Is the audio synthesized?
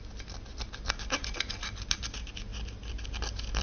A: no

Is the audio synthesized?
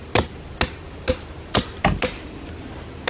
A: no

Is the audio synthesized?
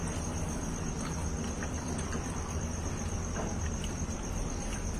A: yes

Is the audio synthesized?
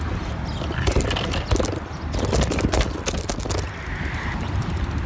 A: no